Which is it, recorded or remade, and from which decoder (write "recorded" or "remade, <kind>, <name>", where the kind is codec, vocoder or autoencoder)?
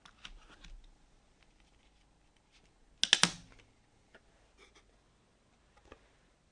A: recorded